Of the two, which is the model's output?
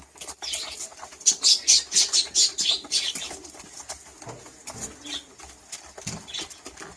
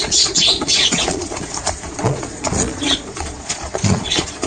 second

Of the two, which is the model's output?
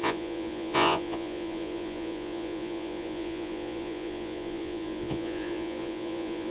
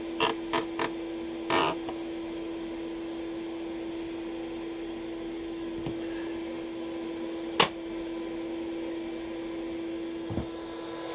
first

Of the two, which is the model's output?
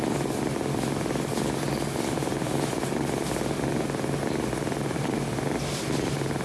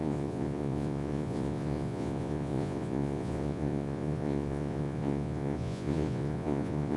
second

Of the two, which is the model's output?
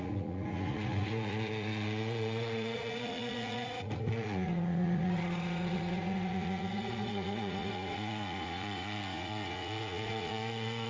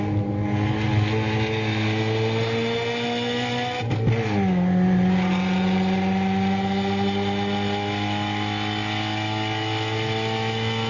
first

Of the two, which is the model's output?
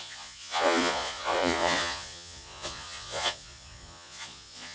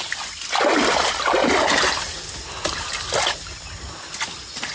first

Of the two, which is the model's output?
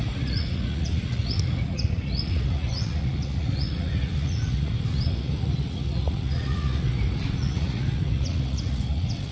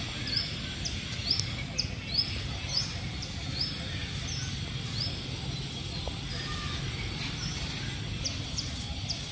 first